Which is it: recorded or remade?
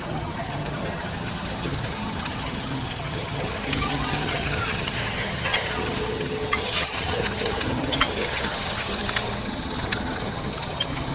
remade